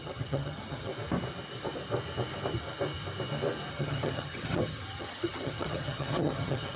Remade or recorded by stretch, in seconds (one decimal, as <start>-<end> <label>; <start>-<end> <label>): 0.0-0.9 remade; 0.9-3.7 recorded; 3.7-6.8 remade